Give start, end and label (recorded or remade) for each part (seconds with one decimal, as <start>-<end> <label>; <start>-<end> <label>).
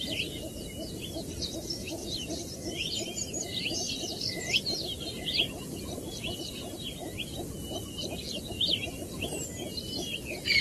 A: 0.0-2.0 recorded; 2.0-3.9 remade; 3.9-10.6 recorded